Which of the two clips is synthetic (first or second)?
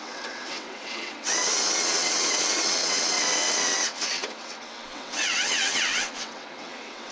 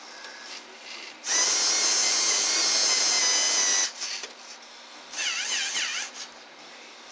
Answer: first